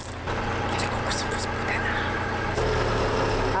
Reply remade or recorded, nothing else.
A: recorded